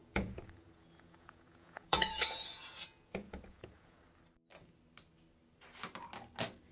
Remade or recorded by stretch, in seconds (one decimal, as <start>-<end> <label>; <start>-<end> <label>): 0.0-4.0 remade; 4.0-6.7 recorded